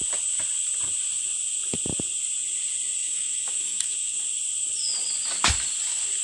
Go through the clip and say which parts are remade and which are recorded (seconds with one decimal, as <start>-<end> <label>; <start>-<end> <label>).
0.0-3.0 recorded; 3.0-4.2 remade; 4.2-6.2 recorded